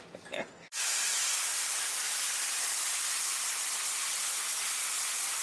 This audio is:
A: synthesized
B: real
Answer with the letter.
B